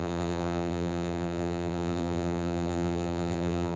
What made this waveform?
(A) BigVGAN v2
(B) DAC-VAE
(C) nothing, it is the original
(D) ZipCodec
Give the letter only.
A